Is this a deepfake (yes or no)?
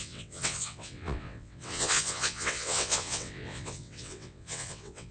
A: yes